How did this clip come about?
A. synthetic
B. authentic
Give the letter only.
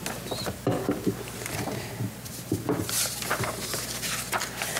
B